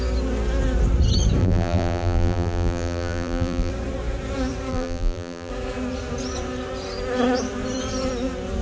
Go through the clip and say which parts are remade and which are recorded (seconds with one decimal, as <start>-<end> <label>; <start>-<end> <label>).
0.0-1.4 recorded; 1.4-3.7 remade; 3.7-4.7 recorded; 4.7-5.5 remade; 5.5-8.6 recorded